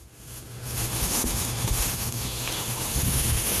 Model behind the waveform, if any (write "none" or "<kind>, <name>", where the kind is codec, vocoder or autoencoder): autoencoder, DAC-VAE